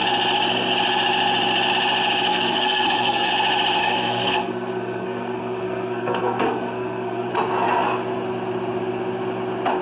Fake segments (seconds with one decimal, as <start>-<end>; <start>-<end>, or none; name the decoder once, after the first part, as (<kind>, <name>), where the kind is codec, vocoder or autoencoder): 2.3-3.3 (codec, SNAC); 3.8-7.3